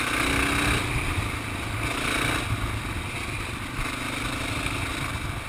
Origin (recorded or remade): recorded